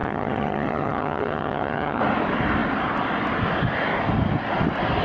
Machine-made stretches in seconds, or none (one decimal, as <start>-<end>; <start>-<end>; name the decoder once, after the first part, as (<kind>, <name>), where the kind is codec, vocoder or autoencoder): 0.0-2.0 (vocoder, HiFi-GAN)